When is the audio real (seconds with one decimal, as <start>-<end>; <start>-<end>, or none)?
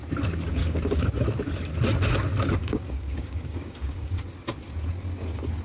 0.0-0.6; 1.1-2.6; 4.1-5.6